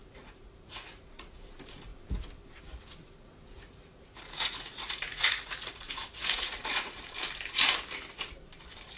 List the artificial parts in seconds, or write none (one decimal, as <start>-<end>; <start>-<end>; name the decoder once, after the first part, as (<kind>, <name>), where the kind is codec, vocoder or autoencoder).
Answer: 0.0-1.5 (vocoder, Vocos); 3.0-7.0